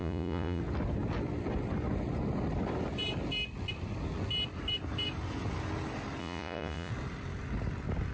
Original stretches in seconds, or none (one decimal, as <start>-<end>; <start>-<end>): 0.6-6.2; 6.9-8.1

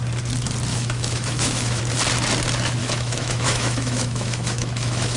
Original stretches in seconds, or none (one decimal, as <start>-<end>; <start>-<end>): 0.0-0.7; 1.8-2.8

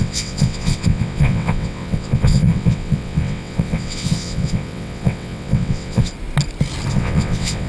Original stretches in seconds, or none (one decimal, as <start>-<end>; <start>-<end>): 6.1-6.9

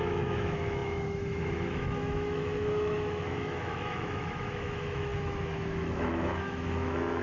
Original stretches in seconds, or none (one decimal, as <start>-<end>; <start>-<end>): none